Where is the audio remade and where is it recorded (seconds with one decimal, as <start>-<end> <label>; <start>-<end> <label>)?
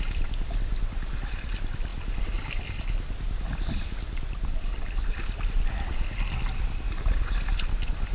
0.0-8.1 recorded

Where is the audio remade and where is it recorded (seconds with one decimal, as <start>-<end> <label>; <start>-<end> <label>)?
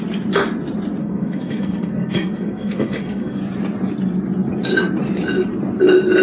0.0-1.0 recorded; 1.0-3.4 remade; 3.4-6.2 recorded